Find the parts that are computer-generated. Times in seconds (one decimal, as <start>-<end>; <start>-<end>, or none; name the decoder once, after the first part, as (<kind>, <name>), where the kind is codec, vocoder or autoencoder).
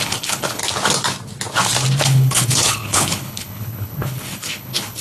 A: 0.0-0.6 (codec, HILCodec); 2.0-5.0